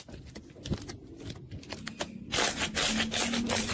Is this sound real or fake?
real